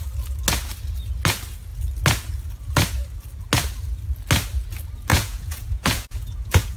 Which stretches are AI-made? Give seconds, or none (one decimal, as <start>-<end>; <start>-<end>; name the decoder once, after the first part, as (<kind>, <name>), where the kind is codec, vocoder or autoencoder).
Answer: 5.1-6.8 (vocoder, Vocos)